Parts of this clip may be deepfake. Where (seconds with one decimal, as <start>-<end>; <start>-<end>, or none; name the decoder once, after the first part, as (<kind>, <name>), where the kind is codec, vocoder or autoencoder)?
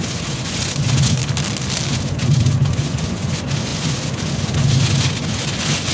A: 0.0-1.2 (vocoder, Vocos); 1.9-5.9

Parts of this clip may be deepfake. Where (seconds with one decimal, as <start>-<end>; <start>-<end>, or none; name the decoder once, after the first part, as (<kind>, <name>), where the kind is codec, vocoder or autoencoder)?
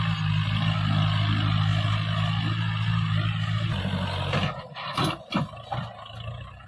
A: none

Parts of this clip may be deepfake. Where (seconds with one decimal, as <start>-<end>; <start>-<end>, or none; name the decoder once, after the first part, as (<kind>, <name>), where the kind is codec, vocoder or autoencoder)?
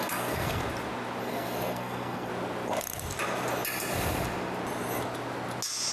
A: 0.0-0.6 (codec, SNAC); 1.2-2.3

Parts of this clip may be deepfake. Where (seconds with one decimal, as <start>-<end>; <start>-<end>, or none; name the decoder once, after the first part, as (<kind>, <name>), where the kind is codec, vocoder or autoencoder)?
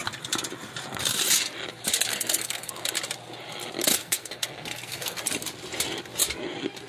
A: 2.1-2.7 (codec, SNAC); 3.9-5.2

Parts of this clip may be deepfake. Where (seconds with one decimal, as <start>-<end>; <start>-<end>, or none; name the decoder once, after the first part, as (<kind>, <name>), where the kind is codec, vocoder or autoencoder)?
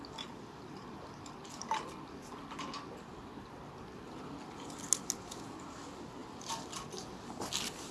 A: none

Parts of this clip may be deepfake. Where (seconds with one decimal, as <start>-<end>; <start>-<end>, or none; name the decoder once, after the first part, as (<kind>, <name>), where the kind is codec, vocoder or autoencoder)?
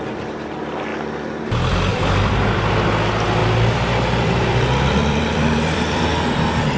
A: 1.9-2.7 (vocoder, BigVGAN v2); 3.4-6.0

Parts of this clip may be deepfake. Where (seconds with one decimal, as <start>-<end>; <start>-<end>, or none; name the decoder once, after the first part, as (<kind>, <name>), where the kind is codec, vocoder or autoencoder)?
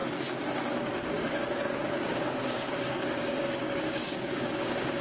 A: 0.7-5.0 (codec, DAC)